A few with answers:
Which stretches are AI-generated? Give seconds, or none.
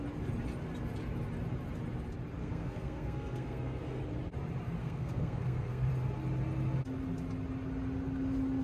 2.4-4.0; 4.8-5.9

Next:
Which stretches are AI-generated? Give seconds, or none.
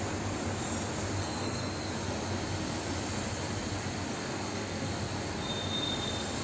1.2-1.7; 4.1-4.9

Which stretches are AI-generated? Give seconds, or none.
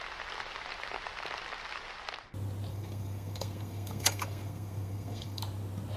2.7-5.4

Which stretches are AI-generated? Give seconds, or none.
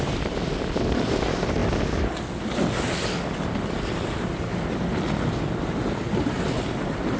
none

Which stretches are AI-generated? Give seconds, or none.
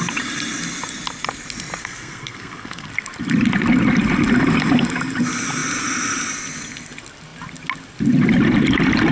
1.8-2.9